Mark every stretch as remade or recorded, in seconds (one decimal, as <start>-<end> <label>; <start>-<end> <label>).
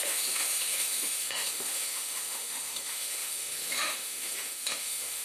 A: 0.0-5.2 remade